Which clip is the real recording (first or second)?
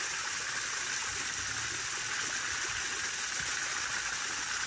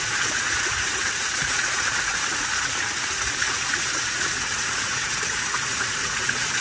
first